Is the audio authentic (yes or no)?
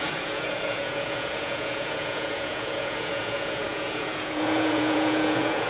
no